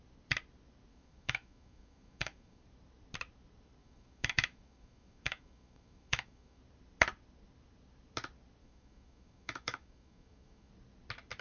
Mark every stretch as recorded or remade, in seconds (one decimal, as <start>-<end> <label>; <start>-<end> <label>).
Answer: 0.0-0.9 recorded; 0.9-2.6 remade; 2.6-3.8 recorded; 3.8-6.6 remade; 6.6-8.6 recorded; 8.6-10.7 remade; 10.7-11.4 recorded